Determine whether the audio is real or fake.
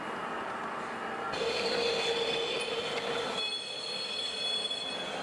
real